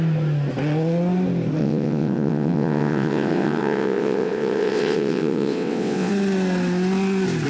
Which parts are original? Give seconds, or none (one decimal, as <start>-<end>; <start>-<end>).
0.0-1.6; 6.1-7.5